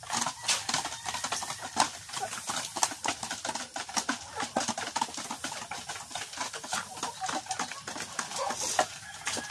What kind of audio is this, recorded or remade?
recorded